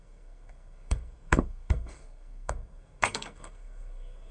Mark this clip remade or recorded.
remade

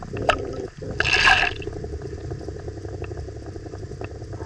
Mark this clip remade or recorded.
recorded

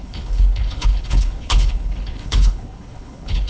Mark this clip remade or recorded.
remade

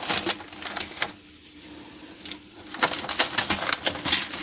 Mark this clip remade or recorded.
recorded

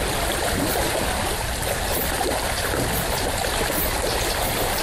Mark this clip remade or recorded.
recorded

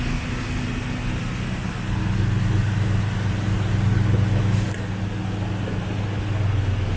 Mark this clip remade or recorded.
recorded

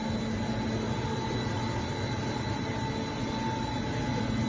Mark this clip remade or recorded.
recorded